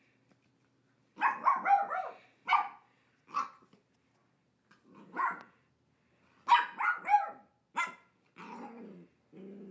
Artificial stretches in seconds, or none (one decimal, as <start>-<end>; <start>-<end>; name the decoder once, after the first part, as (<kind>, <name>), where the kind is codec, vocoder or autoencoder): none